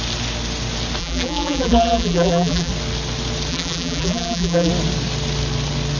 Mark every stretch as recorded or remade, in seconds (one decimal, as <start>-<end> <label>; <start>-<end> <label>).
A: 0.0-1.0 recorded; 1.0-2.7 remade; 2.7-3.5 recorded; 3.5-4.7 remade; 4.7-6.0 recorded